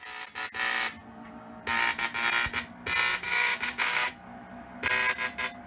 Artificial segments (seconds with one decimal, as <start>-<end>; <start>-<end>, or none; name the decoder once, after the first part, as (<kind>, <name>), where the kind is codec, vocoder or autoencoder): 3.1-4.1 (codec, DAC)